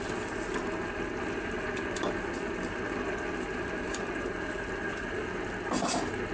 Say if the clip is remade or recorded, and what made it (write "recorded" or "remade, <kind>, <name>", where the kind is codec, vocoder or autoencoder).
recorded